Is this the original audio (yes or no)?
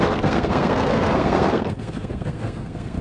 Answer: no